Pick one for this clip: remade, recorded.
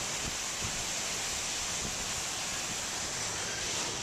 recorded